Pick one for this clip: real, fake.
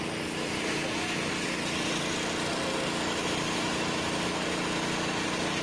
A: real